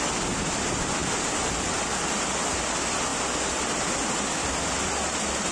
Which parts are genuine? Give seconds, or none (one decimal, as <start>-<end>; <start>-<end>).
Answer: 0.0-5.5